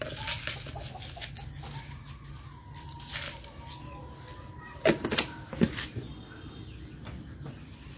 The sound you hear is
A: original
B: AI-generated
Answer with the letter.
A